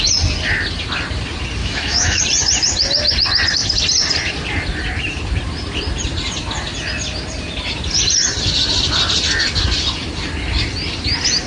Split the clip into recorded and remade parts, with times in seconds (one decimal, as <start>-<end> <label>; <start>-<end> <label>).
0.0-1.6 recorded; 1.6-2.2 remade; 2.2-11.5 recorded